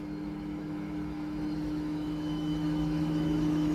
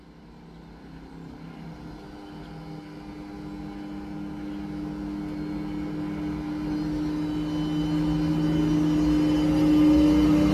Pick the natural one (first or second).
second